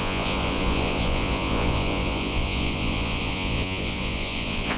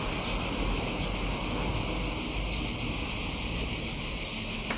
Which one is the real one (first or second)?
second